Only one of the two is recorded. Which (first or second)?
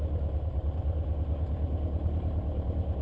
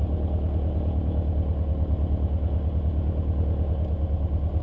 second